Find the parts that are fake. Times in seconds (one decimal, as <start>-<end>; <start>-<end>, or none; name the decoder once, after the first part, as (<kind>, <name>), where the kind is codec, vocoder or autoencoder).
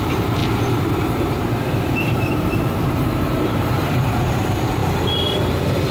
0.0-0.4 (vocoder, BigVGAN v2); 1.8-4.8